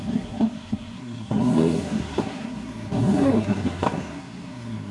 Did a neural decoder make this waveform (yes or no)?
yes